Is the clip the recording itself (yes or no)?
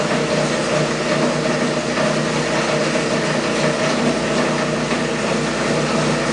yes